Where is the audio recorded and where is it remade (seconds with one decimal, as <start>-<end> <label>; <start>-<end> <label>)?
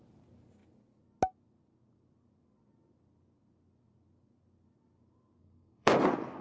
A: 0.0-5.4 recorded; 5.4-5.9 remade; 5.9-6.4 recorded